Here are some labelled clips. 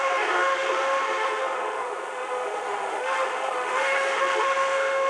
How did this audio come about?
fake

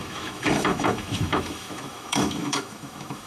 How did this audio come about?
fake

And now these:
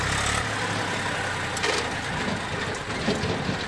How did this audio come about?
real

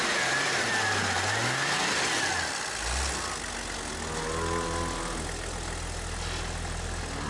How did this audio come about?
real